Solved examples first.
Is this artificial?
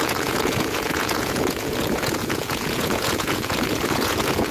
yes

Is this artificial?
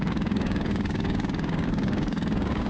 yes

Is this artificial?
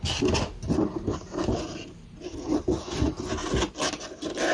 no